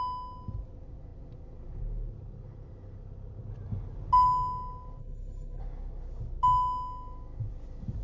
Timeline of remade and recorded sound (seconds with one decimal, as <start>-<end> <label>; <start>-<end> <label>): 0.0-5.0 recorded; 5.0-5.6 remade; 5.6-8.0 recorded